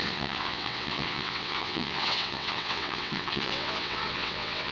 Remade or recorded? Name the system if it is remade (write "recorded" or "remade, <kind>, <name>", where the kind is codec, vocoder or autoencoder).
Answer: remade, vocoder, WaveNeXt